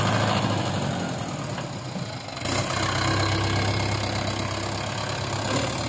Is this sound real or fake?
real